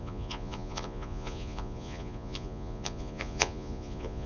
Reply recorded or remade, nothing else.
remade